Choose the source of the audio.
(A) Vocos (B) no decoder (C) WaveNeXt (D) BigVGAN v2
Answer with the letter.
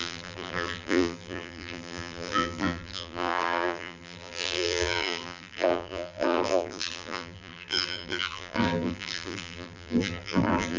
D